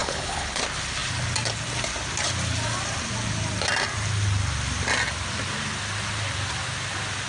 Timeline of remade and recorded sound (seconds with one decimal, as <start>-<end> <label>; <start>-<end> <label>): 0.0-0.6 remade; 0.6-7.3 recorded